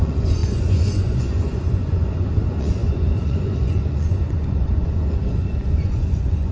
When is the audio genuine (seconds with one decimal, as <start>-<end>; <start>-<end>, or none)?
none